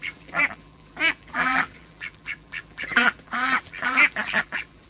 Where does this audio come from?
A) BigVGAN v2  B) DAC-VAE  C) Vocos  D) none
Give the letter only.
A